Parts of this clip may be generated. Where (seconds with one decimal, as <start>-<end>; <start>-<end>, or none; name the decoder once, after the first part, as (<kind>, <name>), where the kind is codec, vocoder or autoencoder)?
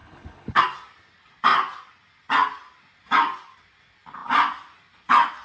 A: 0.0-0.6 (codec, HILCodec)